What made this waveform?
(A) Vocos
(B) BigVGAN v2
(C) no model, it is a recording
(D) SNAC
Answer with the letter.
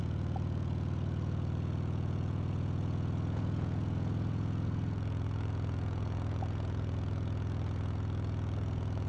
A